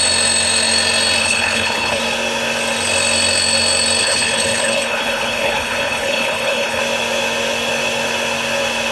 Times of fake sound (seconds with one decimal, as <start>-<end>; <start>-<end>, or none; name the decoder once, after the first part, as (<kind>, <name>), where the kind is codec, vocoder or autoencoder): 1.2-2.0 (codec, HILCodec); 4.0-6.8